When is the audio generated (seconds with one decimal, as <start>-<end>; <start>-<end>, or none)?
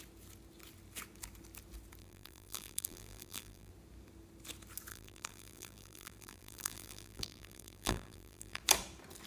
2.0-3.7; 4.9-8.6